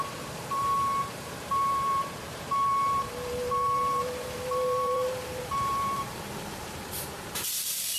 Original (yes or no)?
no